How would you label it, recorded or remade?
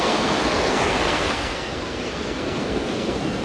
remade